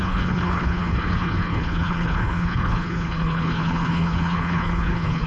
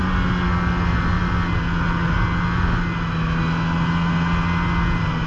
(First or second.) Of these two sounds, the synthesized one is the first